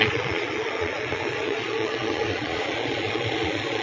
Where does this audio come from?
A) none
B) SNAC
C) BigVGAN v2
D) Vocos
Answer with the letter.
D